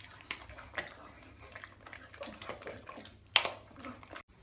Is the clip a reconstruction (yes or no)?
no